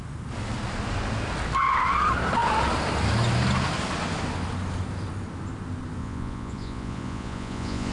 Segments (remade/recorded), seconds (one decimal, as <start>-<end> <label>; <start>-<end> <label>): 0.0-6.0 recorded; 6.0-7.9 remade